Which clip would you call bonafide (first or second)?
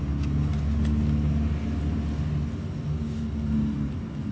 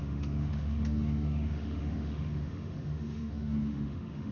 first